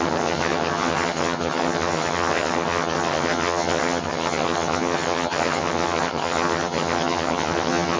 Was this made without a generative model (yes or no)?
no